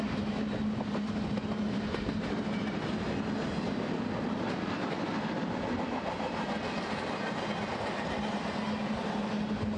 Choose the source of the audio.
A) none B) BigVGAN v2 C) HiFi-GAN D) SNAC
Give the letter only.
A